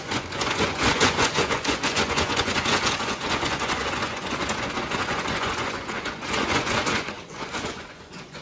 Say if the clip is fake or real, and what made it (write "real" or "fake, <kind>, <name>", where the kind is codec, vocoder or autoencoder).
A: fake, vocoder, Vocos